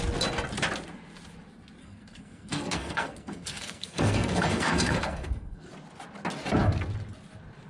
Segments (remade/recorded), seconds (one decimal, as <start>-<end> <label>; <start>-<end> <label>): 0.0-1.8 recorded; 1.8-5.7 remade; 5.7-7.7 recorded